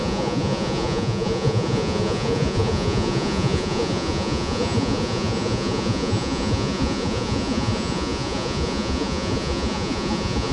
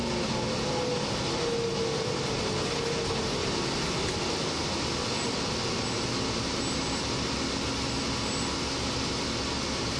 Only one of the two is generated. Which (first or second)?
first